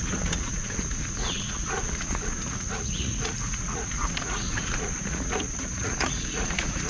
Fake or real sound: fake